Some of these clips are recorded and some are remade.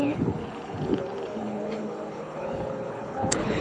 remade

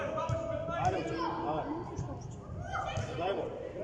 recorded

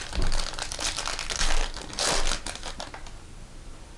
recorded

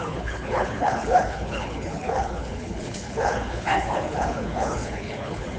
remade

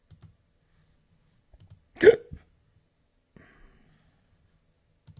recorded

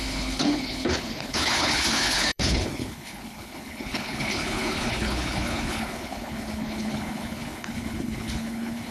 remade